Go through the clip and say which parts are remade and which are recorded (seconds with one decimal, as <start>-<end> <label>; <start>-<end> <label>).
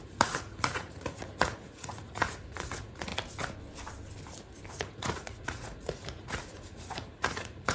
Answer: 0.0-3.1 remade; 3.1-4.7 recorded; 4.7-7.7 remade